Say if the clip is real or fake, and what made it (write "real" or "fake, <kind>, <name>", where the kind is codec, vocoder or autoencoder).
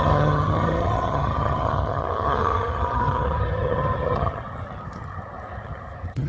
fake, vocoder, HiFi-GAN